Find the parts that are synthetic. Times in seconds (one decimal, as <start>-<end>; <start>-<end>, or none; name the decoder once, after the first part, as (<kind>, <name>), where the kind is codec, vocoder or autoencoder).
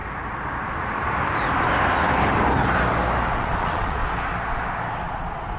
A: 3.4-4.0 (vocoder, Vocos); 5.0-5.6